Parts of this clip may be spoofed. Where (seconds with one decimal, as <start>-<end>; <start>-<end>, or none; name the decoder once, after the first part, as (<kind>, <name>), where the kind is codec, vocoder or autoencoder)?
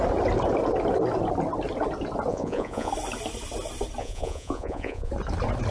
2.3-2.9 (vocoder, Vocos); 4.0-5.1